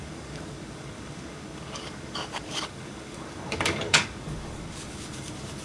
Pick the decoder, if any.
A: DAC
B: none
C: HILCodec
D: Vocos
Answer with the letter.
A